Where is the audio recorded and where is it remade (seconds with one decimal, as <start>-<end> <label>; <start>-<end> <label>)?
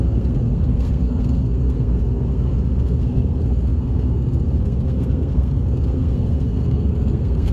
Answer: 0.0-7.5 remade